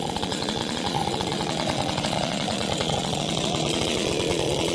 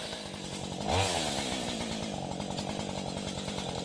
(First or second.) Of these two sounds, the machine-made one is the first